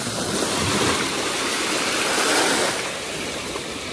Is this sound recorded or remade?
recorded